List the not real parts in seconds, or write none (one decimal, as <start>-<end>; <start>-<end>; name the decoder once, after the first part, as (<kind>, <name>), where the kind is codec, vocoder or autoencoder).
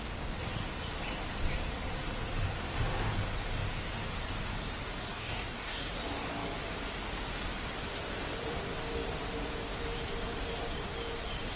5.1-5.9 (codec, DAC)